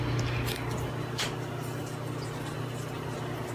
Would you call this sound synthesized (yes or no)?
no